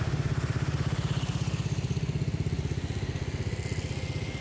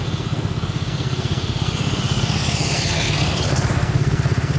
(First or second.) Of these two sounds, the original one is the first